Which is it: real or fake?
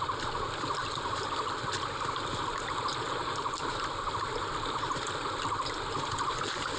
real